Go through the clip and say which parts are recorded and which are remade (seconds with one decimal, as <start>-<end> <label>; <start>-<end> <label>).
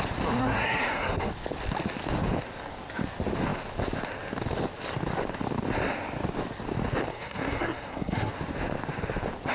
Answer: 0.0-0.4 recorded; 0.4-1.3 remade; 1.3-7.1 recorded; 7.1-8.3 remade; 8.3-9.5 recorded